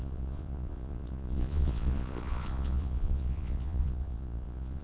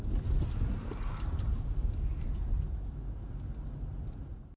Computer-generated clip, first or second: first